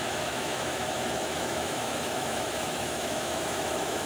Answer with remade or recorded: remade